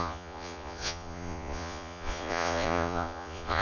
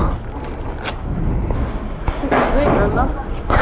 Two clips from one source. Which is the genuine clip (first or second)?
second